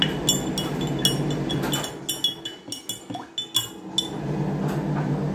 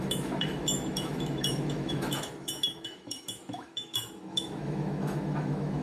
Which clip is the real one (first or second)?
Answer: first